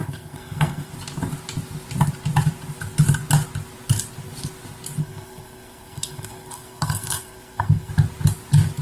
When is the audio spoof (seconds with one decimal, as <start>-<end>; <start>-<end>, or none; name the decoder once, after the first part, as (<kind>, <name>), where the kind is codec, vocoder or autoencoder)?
0.0-0.9 (codec, SNAC); 5.0-7.9